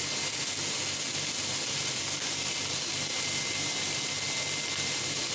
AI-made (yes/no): no